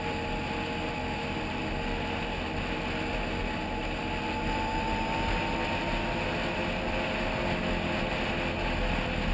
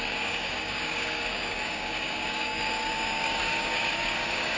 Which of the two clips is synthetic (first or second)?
second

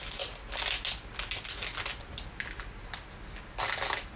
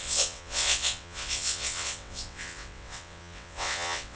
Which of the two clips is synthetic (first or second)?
second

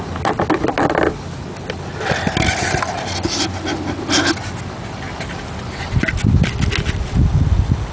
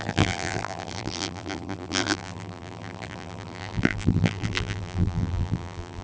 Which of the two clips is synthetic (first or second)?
second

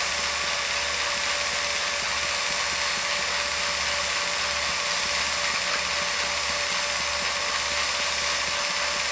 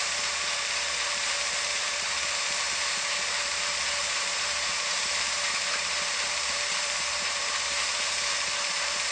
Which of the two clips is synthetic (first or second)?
second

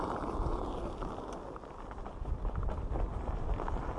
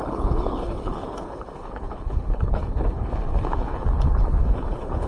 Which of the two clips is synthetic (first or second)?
second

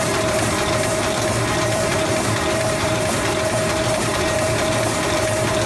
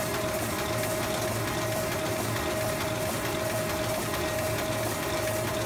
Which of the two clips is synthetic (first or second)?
first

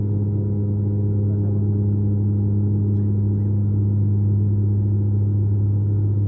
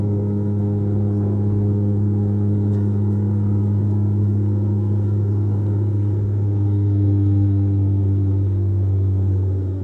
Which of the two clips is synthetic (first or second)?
second